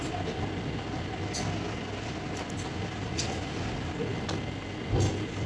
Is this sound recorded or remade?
recorded